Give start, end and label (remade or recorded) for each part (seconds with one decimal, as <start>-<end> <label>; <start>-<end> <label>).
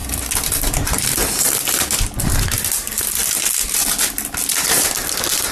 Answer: 0.0-5.5 recorded